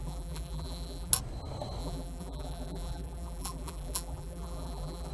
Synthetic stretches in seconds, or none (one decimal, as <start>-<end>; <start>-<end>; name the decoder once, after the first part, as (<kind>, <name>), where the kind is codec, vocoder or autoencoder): 0.0-1.1 (vocoder, BigVGAN v2); 1.8-5.1